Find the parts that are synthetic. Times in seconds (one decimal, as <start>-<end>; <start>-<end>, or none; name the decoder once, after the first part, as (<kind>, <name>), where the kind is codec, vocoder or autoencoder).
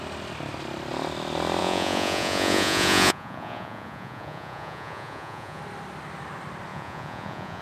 1.6-5.6 (vocoder, Vocos); 6.7-7.6